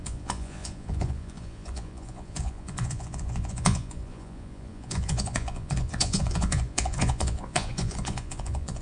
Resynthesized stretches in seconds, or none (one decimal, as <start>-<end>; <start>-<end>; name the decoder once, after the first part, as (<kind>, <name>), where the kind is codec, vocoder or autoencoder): 0.0-8.8 (vocoder, Vocos)